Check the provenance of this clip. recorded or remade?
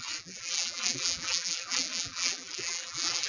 remade